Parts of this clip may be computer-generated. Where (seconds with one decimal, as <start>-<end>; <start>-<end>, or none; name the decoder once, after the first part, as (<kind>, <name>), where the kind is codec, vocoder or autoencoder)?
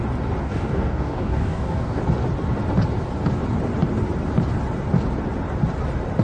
0.4-2.0 (codec, DAC)